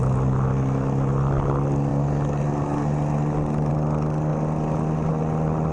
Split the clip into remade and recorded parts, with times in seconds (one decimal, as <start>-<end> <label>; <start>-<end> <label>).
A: 0.0-5.7 recorded